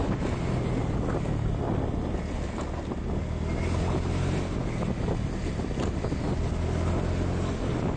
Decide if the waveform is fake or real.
real